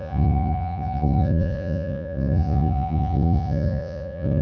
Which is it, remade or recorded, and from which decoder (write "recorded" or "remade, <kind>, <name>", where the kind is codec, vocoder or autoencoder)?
remade, vocoder, Vocos